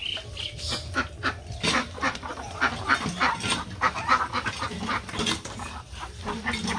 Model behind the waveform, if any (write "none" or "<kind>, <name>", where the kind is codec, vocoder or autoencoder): none